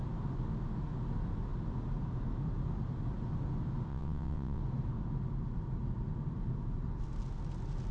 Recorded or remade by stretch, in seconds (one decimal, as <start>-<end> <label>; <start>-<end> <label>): 0.0-3.9 recorded; 3.9-4.6 remade; 4.6-7.9 recorded